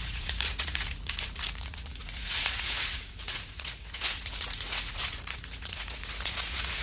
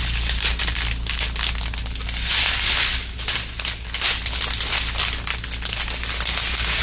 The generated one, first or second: first